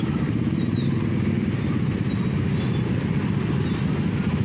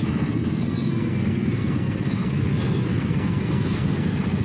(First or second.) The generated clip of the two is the second